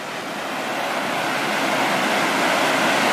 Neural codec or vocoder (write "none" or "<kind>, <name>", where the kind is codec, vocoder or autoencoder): none